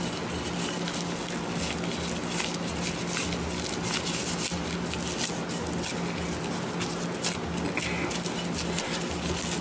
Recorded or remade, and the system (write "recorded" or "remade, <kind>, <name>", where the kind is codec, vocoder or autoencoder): recorded